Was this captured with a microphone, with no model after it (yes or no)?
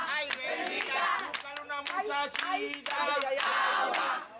yes